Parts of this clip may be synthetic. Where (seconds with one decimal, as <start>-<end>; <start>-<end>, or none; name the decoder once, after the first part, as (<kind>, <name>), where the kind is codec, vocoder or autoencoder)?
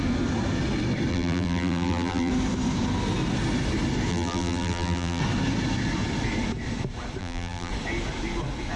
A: 1.1-2.3 (vocoder, BigVGAN v2); 4.1-5.2; 7.2-7.7